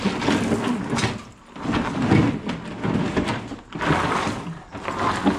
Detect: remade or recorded recorded